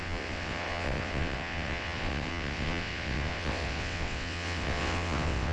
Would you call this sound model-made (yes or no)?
yes